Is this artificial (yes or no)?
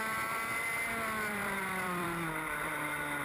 yes